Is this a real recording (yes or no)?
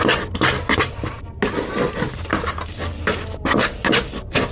yes